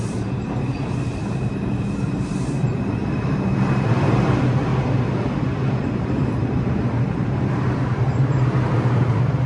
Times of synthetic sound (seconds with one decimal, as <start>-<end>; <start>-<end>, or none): 0.0-1.6; 2.1-4.7; 5.7-9.5